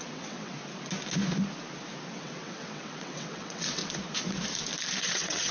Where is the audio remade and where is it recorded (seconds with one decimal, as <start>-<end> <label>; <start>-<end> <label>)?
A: 0.0-0.6 remade; 0.6-2.1 recorded; 2.1-3.8 remade; 3.8-5.0 recorded; 5.0-5.5 remade